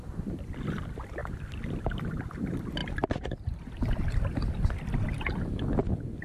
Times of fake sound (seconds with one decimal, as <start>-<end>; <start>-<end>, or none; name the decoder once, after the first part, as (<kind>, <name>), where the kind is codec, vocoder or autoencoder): 2.8-4.1 (vocoder, BigVGAN v2)